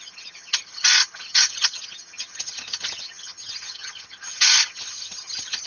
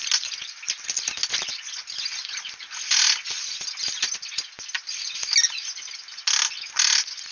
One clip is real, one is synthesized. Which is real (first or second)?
second